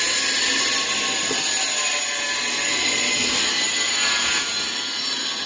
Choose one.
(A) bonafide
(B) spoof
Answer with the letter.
A